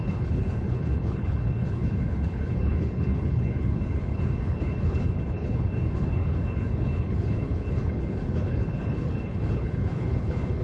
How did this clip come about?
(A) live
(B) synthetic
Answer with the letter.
B